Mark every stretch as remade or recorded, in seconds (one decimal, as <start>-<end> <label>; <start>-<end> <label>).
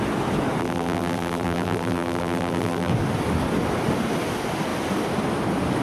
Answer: 0.0-0.6 recorded; 0.6-2.9 remade; 2.9-5.8 recorded